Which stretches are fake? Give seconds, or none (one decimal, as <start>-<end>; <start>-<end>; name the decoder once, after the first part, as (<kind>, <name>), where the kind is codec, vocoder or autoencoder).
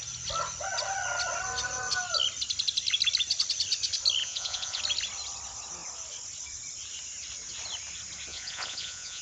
4.2-4.8 (vocoder, Vocos); 8.3-9.2